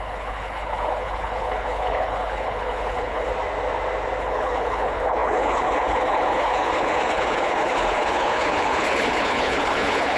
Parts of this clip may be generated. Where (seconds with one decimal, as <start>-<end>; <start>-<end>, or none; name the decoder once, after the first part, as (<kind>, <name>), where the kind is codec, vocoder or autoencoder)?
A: 0.0-3.3 (codec, HILCodec); 4.2-10.2